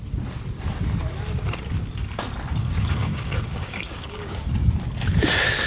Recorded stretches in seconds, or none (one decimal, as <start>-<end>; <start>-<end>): 0.0-2.6; 4.4-5.7

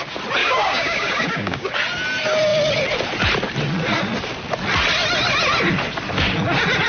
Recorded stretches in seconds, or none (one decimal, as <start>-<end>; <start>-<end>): 0.0-0.4; 1.7-6.9